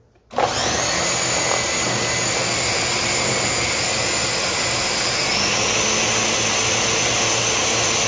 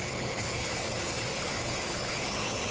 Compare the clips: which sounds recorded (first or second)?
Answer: first